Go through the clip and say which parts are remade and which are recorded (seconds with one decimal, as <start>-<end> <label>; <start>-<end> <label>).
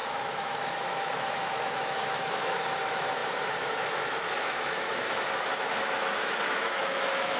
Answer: 0.0-7.4 remade